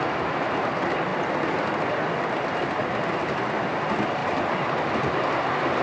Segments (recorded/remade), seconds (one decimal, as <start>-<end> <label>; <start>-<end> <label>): 0.0-5.8 recorded